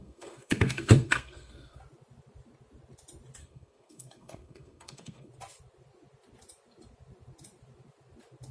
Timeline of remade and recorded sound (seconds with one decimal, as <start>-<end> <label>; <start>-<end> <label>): 0.0-1.8 remade; 1.8-3.4 recorded; 3.4-5.3 remade; 5.3-8.5 recorded